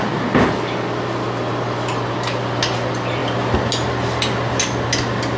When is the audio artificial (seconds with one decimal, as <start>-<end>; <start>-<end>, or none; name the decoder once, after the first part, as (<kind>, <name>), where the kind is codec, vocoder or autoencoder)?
none